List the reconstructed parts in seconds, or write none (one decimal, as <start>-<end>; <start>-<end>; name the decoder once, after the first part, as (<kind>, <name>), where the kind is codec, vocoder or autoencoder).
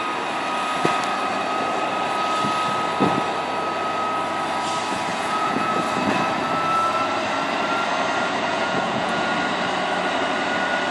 5.1-5.7 (vocoder, Vocos); 8.5-9.3